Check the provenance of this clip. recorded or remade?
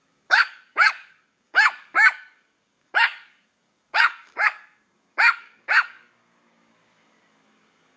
remade